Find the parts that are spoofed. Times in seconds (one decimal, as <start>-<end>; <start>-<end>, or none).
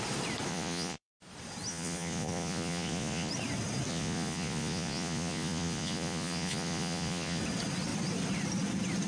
0.5-1.1; 1.7-3.3; 3.9-7.4